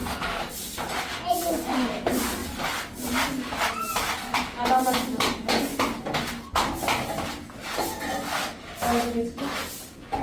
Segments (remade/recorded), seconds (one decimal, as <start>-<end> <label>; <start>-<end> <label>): 0.0-0.5 remade; 0.5-10.2 recorded